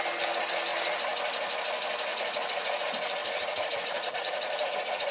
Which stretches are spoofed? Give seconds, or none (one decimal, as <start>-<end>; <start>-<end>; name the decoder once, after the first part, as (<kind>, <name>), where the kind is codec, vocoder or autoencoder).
2.1-2.8 (vocoder, Vocos); 3.2-5.1